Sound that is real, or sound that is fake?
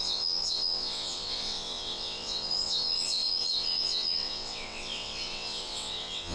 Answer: fake